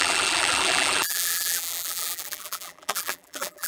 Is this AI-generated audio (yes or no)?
yes